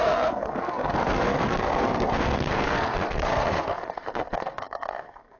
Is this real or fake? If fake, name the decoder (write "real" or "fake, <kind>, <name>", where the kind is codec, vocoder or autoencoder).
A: fake, codec, SNAC